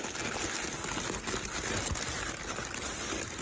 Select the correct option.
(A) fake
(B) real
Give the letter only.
B